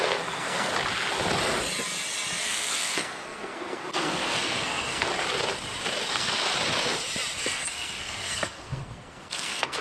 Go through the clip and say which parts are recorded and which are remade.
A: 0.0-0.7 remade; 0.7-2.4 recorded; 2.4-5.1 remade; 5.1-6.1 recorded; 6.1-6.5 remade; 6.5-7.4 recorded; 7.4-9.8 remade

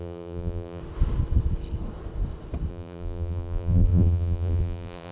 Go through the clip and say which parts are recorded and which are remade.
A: 0.0-0.8 remade; 0.8-2.7 recorded; 2.7-5.1 remade

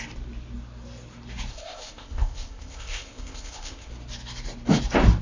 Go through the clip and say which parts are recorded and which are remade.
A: 0.0-1.5 recorded; 1.5-3.9 remade; 3.9-5.2 recorded